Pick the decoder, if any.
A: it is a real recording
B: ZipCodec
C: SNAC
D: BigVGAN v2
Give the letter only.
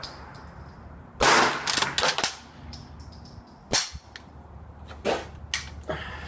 A